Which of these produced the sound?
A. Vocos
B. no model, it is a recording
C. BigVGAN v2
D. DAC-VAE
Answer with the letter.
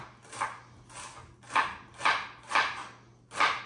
B